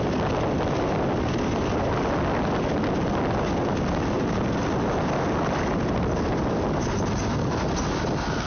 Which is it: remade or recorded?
recorded